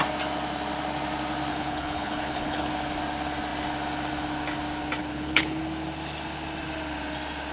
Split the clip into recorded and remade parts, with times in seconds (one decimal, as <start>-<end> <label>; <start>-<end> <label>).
0.0-1.5 recorded; 1.5-2.7 remade; 2.7-5.0 recorded; 5.0-5.6 remade; 5.6-7.5 recorded